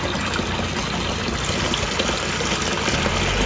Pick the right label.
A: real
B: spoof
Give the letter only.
A